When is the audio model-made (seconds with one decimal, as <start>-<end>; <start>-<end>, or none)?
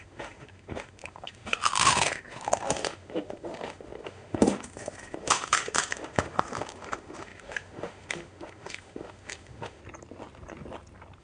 0.0-9.8